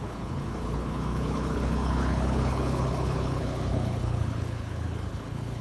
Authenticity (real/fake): fake